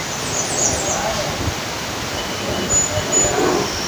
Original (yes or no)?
yes